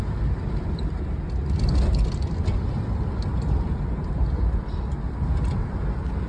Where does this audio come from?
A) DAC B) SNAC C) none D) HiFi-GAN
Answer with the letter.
C